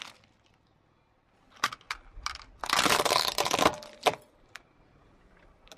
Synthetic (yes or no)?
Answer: no